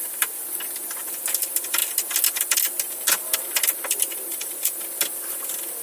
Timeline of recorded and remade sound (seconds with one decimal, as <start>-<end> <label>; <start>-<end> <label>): 0.0-5.8 recorded

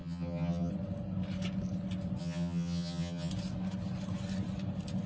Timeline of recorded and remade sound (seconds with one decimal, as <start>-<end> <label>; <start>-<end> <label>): 0.0-0.7 remade; 0.7-2.2 recorded; 2.2-3.3 remade; 3.3-5.1 recorded

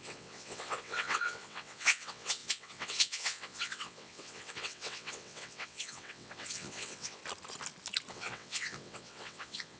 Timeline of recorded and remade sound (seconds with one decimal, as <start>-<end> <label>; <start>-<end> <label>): 0.0-7.2 remade; 7.2-8.1 recorded; 8.1-9.8 remade

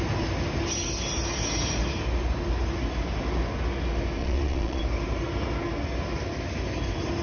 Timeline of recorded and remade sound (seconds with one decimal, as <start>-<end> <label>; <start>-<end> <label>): 0.0-4.2 recorded; 4.2-4.8 remade; 4.8-7.2 recorded

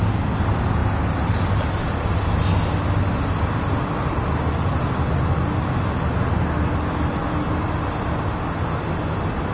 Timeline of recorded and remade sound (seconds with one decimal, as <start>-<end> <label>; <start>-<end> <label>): 0.0-0.8 recorded; 0.8-1.3 remade; 1.3-9.5 recorded

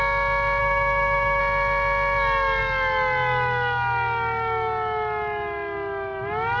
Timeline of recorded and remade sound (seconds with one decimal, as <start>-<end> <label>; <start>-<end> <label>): 0.0-0.6 recorded; 0.6-1.4 remade; 1.4-6.6 recorded

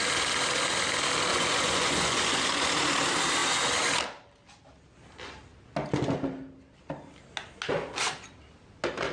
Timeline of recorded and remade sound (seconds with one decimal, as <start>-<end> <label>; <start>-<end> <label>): 0.0-1.3 recorded; 1.3-2.7 remade; 2.7-9.1 recorded